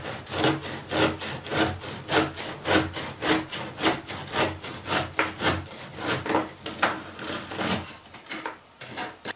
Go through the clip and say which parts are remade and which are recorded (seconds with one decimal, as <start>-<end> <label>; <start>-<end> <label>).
0.0-9.4 recorded